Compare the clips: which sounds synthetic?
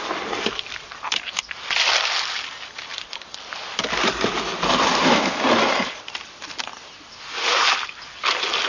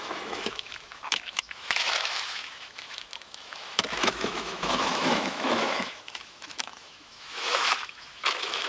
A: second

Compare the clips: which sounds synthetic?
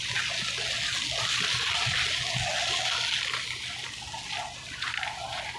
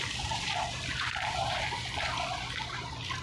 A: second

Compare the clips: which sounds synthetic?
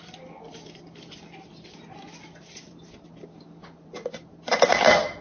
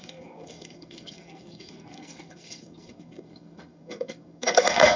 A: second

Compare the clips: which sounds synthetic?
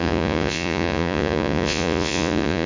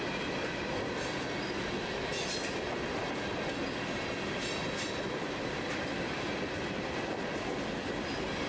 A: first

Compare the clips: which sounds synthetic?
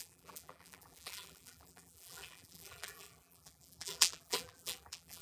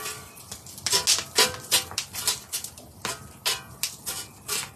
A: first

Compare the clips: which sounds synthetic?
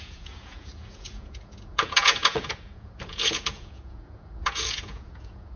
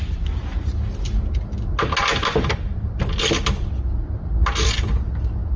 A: first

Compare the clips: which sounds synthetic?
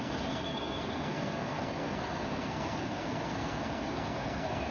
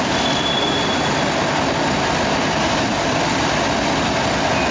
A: first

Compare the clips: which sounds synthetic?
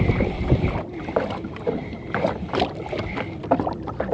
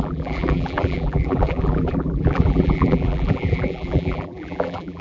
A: second